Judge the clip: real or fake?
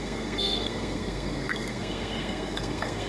fake